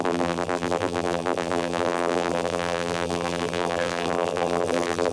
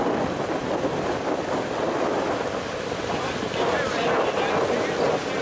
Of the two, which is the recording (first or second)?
second